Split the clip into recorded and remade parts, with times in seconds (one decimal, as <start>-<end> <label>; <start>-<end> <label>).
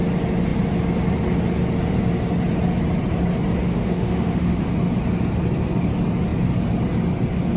0.0-3.6 recorded; 3.6-4.7 remade; 4.7-7.6 recorded